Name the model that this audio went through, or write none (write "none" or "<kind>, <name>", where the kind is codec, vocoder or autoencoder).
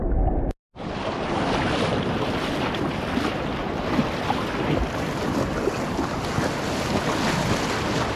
none